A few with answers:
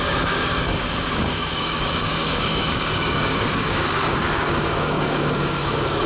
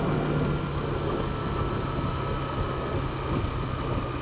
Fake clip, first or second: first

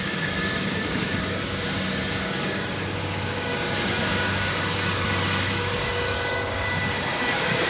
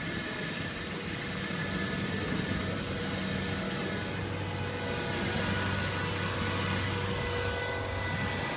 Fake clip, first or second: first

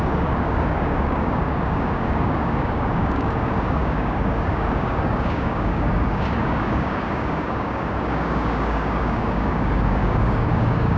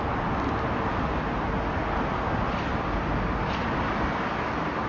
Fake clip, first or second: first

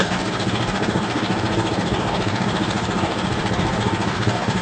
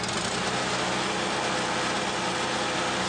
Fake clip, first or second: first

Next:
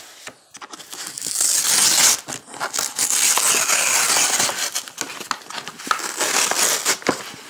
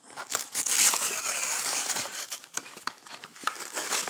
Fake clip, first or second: second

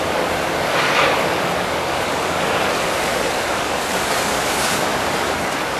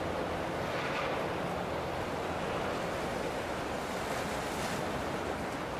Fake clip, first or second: first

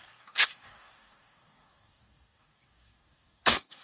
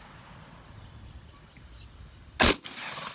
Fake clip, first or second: first